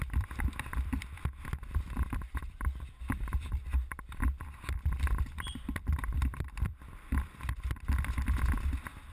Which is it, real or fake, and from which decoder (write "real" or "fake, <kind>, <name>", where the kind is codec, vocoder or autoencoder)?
fake, vocoder, BigVGAN v2